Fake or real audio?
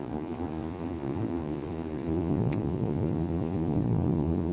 fake